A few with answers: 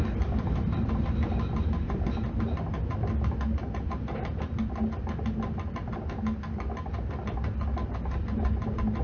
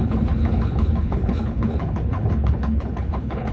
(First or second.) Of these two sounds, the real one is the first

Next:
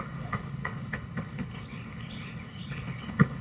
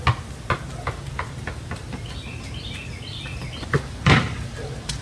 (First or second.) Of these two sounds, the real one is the second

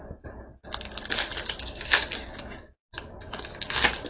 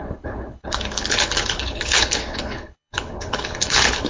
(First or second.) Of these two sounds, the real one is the first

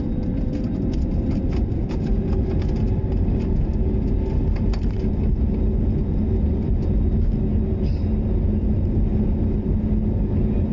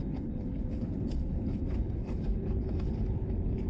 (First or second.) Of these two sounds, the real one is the first